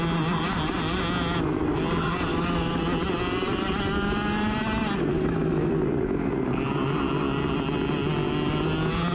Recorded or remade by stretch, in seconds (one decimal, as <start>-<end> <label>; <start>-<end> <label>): 0.0-2.3 recorded; 2.3-2.8 remade; 2.8-5.1 recorded; 5.1-5.7 remade; 5.7-9.1 recorded